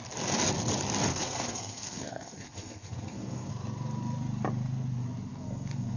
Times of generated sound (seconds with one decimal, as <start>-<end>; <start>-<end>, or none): 1.1-3.5; 5.3-6.0